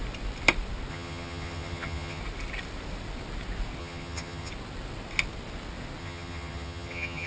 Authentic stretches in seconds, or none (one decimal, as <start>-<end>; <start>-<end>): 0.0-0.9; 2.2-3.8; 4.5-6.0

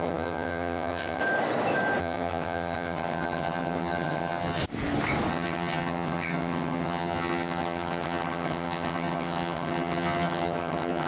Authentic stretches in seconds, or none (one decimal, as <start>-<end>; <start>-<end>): 1.2-2.0; 4.6-5.3

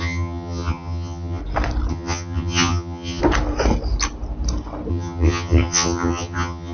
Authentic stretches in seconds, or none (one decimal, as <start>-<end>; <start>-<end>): 1.4-1.9; 3.2-4.9